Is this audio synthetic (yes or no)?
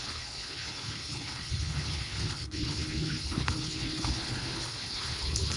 yes